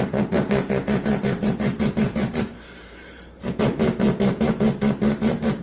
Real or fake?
fake